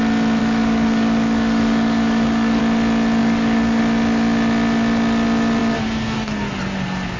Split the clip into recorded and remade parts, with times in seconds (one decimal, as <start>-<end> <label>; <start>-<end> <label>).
0.0-0.4 recorded; 0.4-2.6 remade; 2.6-3.2 recorded; 3.2-3.8 remade; 3.8-7.2 recorded